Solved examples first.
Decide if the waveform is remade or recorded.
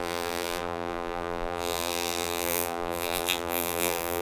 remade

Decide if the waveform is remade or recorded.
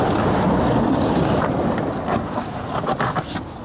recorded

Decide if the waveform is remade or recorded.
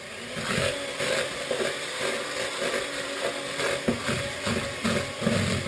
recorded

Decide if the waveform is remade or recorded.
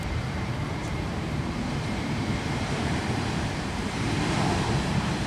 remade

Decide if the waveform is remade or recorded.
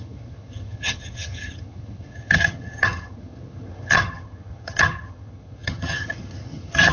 remade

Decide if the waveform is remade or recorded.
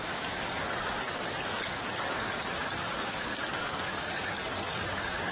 remade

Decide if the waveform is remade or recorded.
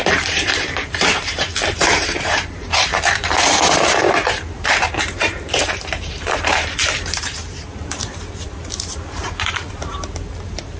remade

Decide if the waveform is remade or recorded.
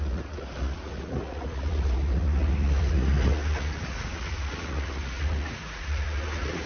remade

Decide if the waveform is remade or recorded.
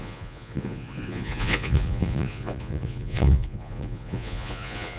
remade